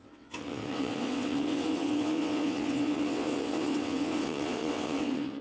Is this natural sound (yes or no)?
no